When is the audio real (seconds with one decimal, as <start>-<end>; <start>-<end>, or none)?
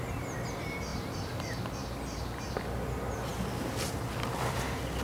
0.0-0.9; 1.4-5.0